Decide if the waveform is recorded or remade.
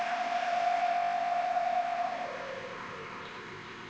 remade